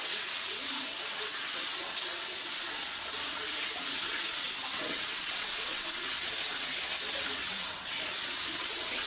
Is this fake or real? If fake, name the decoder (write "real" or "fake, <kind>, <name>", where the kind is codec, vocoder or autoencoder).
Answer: fake, vocoder, WaveNeXt